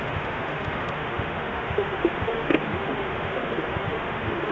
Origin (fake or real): fake